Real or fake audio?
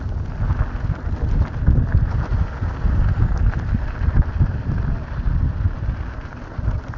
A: real